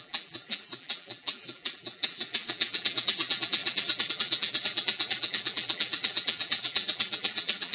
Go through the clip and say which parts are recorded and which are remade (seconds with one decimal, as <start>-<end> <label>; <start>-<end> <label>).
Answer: 0.0-7.7 remade